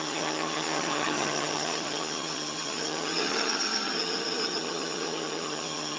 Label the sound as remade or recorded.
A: remade